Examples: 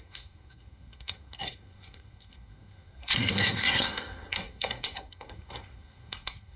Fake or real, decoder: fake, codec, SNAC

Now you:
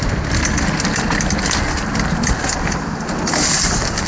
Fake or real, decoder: real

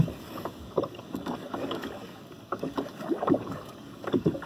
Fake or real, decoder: fake, codec, DAC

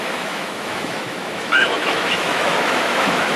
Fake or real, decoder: fake, autoencoder, DAC-VAE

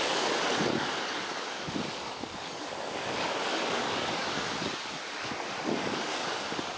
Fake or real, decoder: fake, codec, DAC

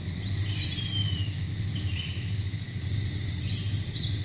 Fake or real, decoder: real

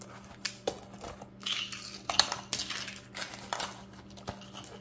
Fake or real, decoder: real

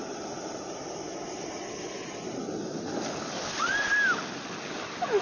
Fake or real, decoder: real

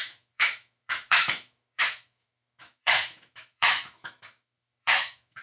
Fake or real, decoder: fake, autoencoder, DAC-VAE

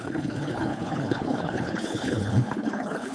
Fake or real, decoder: fake, codec, HILCodec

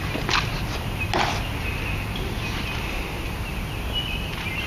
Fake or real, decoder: real